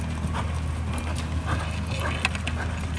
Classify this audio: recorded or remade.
recorded